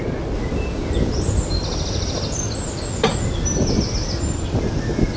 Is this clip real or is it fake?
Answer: real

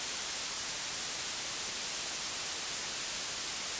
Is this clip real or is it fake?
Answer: real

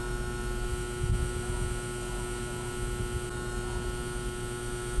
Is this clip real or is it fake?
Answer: real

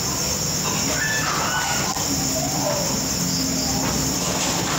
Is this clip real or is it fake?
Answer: real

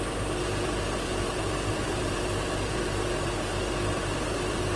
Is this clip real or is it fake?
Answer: fake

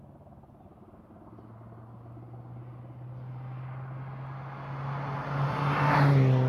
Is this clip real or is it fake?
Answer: real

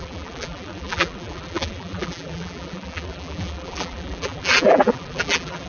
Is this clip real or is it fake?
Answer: fake